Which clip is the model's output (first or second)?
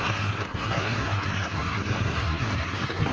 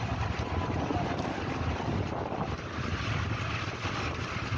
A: first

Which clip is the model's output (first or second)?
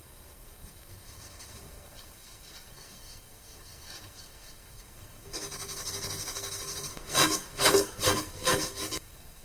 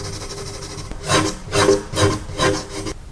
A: first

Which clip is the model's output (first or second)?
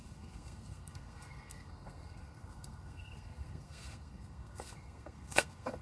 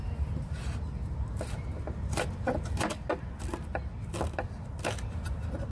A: first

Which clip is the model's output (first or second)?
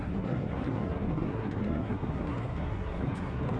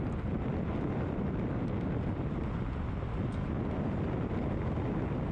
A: first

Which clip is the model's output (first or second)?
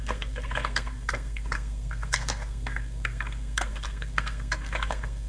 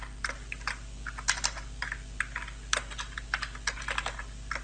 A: first